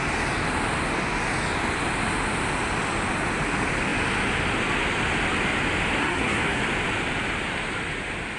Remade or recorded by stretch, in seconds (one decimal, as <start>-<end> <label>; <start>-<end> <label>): 0.0-6.0 recorded; 6.0-6.6 remade; 6.6-8.4 recorded